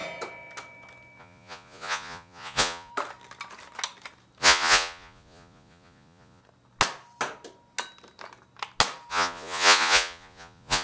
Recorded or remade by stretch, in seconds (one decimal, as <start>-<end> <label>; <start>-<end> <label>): 0.0-1.2 recorded; 1.2-2.9 remade; 2.9-4.4 recorded; 4.4-6.4 remade; 6.4-9.1 recorded; 9.1-10.8 remade